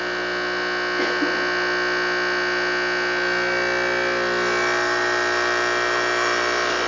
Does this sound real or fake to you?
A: real